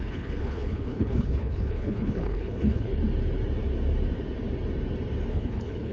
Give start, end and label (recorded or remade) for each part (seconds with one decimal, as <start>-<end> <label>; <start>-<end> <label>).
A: 0.0-3.0 remade; 3.0-5.3 recorded; 5.3-5.9 remade